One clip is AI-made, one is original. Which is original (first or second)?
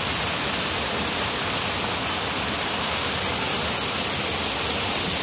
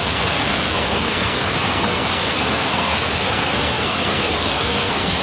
first